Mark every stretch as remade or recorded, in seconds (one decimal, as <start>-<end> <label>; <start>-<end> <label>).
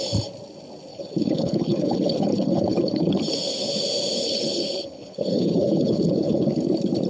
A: 0.0-0.9 recorded; 0.9-3.2 remade; 3.2-4.2 recorded; 4.2-6.6 remade; 6.6-7.1 recorded